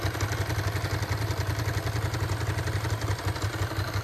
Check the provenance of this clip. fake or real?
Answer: real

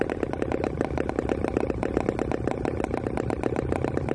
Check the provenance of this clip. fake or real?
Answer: real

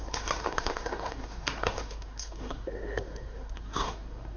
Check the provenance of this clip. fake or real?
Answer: fake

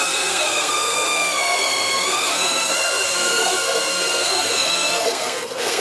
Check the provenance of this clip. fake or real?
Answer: fake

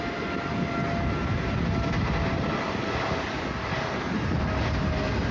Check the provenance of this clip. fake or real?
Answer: real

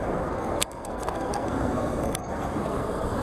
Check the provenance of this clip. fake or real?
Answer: fake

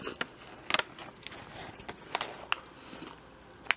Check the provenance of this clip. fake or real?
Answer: real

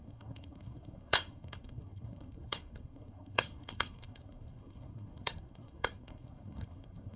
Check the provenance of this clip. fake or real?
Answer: fake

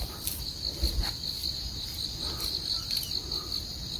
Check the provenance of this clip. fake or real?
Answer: real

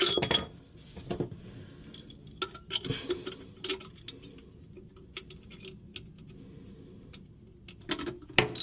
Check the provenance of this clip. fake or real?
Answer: real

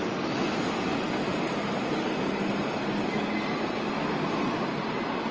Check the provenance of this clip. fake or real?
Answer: real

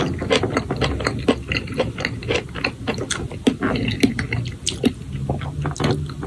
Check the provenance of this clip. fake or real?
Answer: real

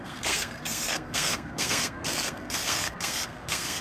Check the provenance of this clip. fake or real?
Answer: fake